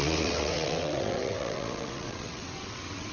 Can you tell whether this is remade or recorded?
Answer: remade